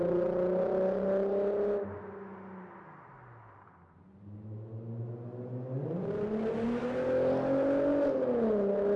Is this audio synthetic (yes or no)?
no